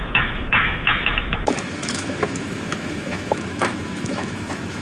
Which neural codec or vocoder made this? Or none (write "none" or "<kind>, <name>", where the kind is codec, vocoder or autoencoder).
autoencoder, DAC-VAE